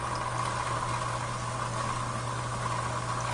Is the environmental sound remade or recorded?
recorded